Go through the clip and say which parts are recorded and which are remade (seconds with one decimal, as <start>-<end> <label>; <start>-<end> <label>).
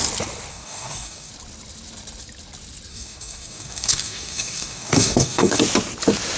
0.0-0.5 recorded; 0.5-1.3 remade; 1.3-2.9 recorded; 2.9-5.6 remade; 5.6-6.4 recorded